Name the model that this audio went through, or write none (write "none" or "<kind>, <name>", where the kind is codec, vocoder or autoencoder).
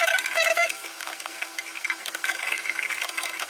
codec, SNAC